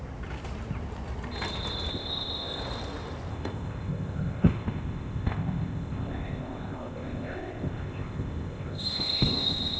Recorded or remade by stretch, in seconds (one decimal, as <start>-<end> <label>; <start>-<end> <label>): 0.0-1.9 recorded; 1.9-2.6 remade; 2.6-3.3 recorded; 3.3-9.8 remade